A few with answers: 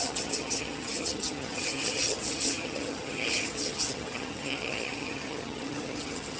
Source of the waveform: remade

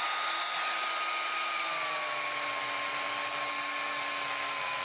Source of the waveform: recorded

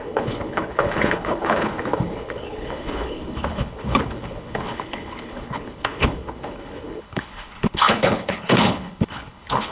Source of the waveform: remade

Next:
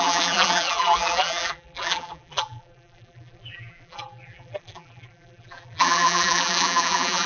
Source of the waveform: remade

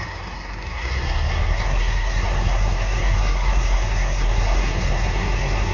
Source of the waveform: remade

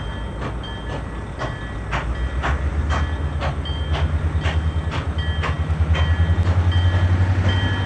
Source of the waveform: recorded